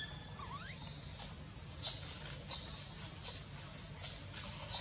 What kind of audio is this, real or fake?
real